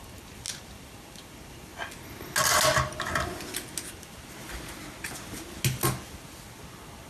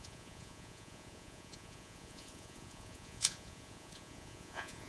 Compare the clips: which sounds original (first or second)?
first